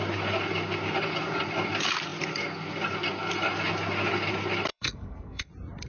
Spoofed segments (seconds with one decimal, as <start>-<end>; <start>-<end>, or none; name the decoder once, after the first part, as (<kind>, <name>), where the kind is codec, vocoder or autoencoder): 4.7-5.5 (codec, SNAC)